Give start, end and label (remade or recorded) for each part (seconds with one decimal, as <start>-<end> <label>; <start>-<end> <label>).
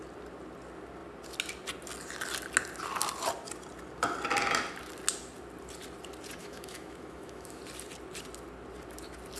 0.0-6.4 recorded; 6.4-7.6 remade; 7.6-9.4 recorded